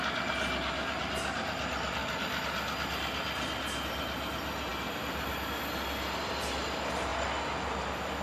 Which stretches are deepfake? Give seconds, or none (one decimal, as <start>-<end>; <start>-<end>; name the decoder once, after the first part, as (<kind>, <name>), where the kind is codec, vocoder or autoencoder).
none